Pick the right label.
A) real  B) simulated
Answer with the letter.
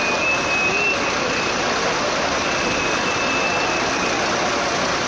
A